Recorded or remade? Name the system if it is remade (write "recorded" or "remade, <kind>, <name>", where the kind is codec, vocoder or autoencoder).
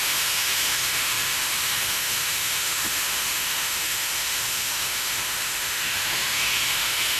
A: remade, autoencoder, DAC-VAE